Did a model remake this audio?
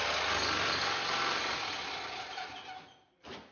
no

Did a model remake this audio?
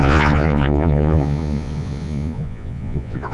yes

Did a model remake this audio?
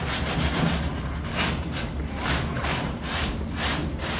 yes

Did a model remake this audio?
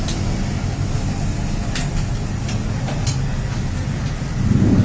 no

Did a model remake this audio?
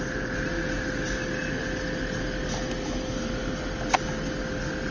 no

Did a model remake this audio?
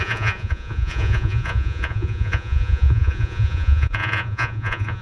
yes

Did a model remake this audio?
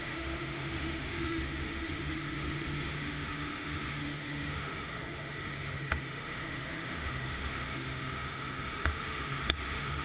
yes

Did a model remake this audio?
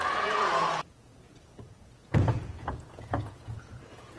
yes